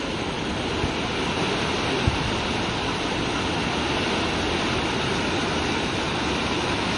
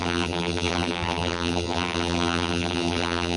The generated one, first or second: second